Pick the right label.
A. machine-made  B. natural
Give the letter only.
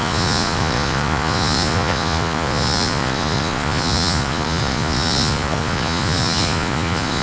A